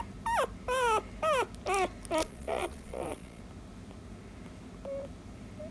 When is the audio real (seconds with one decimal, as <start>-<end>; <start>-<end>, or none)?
0.0-2.2; 3.4-5.7